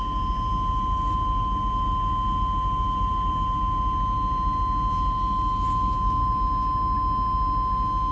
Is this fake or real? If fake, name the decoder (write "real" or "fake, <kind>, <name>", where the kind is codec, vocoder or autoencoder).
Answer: real